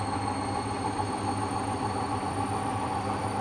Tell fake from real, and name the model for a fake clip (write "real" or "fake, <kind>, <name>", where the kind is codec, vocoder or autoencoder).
fake, vocoder, BigVGAN v2